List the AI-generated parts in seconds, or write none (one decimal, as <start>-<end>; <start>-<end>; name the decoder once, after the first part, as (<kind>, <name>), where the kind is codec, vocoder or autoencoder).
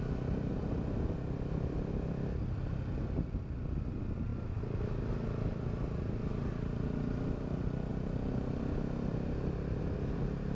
none